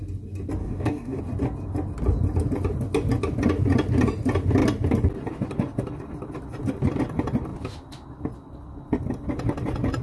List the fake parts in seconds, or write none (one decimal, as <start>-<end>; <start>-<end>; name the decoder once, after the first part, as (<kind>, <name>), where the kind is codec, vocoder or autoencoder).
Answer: 0.6-1.2 (codec, DAC)